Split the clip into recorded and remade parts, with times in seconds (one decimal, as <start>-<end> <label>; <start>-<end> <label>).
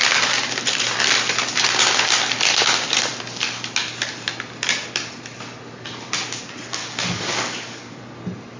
0.0-6.8 recorded; 6.8-8.0 remade; 8.0-8.6 recorded